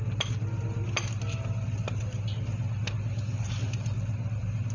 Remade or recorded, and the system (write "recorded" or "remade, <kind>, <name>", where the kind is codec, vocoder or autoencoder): recorded